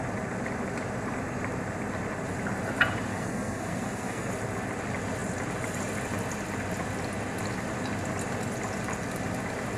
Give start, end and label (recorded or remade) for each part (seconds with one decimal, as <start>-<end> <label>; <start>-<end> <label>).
0.0-3.1 recorded; 3.1-4.3 remade; 4.3-9.8 recorded